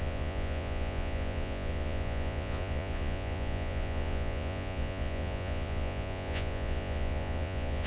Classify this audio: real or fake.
fake